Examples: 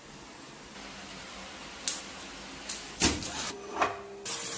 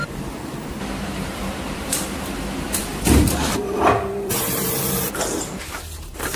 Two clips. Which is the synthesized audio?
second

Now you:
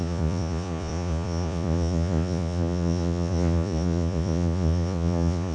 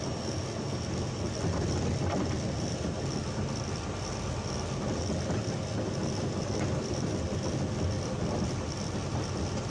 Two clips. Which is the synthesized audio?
first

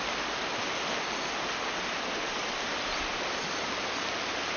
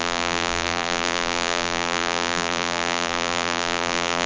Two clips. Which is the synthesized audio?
second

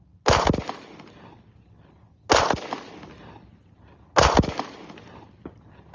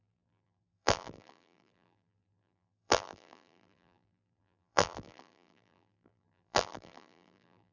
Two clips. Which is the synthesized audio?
second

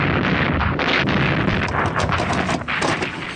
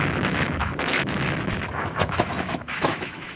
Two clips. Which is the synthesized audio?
second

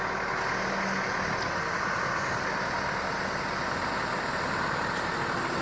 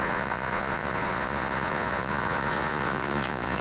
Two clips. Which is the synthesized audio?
second